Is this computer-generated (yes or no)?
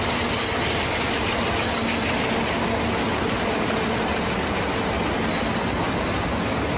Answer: no